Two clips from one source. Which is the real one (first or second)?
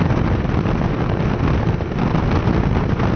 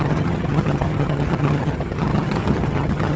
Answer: first